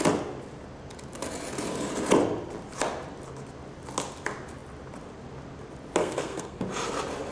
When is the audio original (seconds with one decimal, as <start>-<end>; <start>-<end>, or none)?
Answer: 0.0-6.0; 6.6-7.3